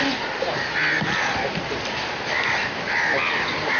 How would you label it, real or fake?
real